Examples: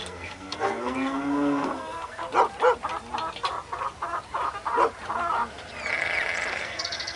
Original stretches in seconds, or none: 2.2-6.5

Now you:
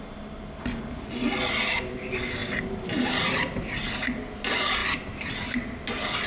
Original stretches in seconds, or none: 0.0-6.3

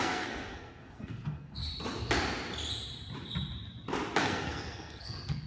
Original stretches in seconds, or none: 1.6-4.2

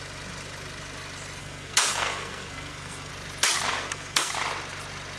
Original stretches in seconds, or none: 0.0-1.4; 3.1-3.7; 4.3-5.2